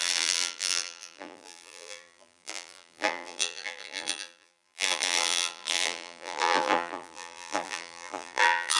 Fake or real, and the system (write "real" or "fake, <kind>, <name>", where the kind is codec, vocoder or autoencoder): fake, vocoder, BigVGAN v2